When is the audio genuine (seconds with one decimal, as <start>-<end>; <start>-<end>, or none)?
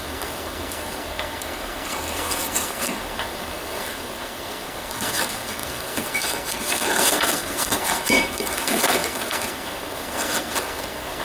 none